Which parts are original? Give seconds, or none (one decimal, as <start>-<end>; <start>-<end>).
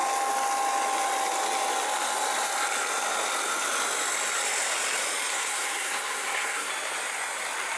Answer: 0.0-5.3; 6.7-7.8